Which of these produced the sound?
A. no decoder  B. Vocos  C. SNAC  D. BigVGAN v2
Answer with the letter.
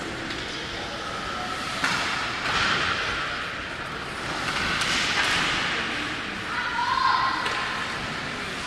A